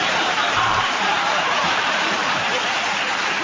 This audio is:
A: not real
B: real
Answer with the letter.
A